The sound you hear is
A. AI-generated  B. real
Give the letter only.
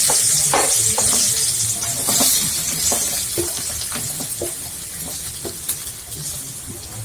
B